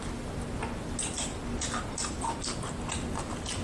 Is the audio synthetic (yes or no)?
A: no